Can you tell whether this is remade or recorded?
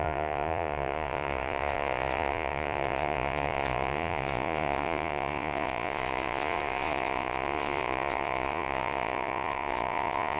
remade